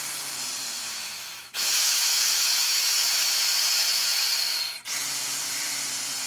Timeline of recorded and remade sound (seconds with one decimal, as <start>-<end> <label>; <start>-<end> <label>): 0.0-0.8 recorded; 0.8-4.6 remade; 4.6-6.3 recorded